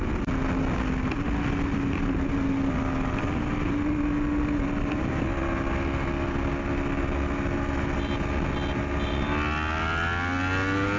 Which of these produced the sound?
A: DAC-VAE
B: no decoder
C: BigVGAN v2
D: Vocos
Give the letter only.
B